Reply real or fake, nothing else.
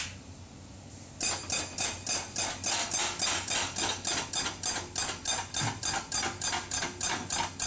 real